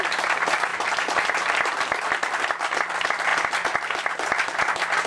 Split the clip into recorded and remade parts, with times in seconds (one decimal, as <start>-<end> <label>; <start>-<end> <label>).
0.0-0.7 recorded; 0.7-2.5 remade; 2.5-5.1 recorded